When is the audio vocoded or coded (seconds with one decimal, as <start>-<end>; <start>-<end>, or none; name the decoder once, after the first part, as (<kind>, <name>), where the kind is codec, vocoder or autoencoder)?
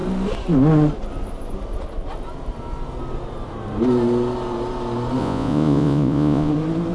5.2-6.5 (vocoder, Vocos)